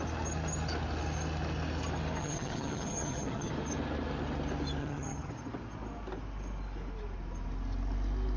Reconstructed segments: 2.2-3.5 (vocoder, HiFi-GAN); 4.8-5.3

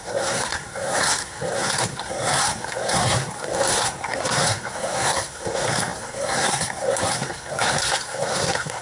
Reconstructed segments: 0.0-8.8 (codec, SNAC)

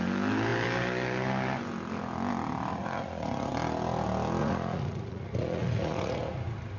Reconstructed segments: 2.7-3.5 (vocoder, Vocos); 4.4-6.2